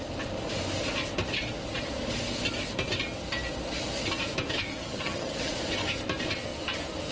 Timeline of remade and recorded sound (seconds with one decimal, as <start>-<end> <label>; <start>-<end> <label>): 0.0-4.7 recorded; 4.7-5.5 remade; 5.5-7.1 recorded